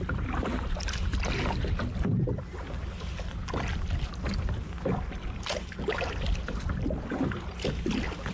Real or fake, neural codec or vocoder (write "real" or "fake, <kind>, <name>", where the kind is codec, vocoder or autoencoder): real